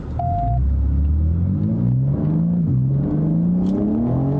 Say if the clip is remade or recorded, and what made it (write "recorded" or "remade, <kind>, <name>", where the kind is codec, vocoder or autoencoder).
recorded